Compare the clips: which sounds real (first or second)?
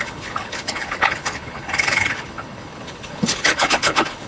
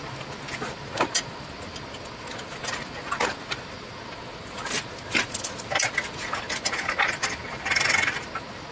second